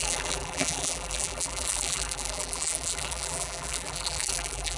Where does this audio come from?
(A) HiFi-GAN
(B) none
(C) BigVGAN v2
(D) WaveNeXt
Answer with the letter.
C